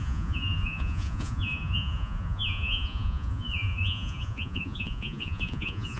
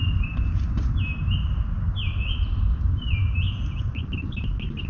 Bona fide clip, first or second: second